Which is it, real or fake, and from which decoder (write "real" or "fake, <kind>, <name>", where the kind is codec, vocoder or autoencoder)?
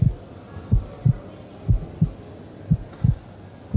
real